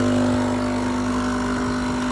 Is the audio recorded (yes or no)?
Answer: yes